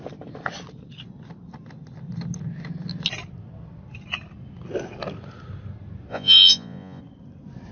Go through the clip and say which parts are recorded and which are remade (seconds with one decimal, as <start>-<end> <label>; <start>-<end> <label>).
0.0-6.1 recorded; 6.1-7.0 remade; 7.0-7.7 recorded